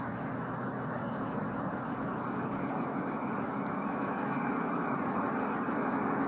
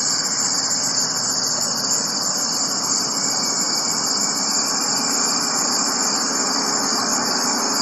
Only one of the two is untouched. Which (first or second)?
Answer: second